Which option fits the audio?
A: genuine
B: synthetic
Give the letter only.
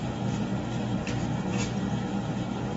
A